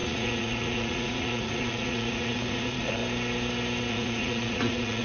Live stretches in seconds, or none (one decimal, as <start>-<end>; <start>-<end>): 3.0-3.9